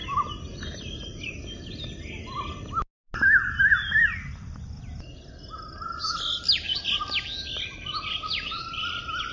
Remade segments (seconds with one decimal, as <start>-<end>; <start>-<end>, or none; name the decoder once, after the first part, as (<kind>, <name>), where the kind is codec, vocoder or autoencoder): none